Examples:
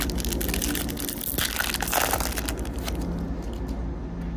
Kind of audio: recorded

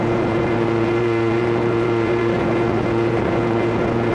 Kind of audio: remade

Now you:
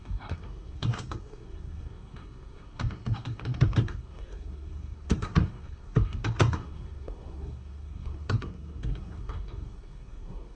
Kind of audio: remade